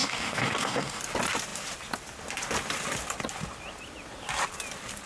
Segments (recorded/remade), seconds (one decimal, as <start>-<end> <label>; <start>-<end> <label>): 0.0-1.0 remade; 1.0-5.1 recorded